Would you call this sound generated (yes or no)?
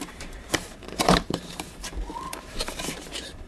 yes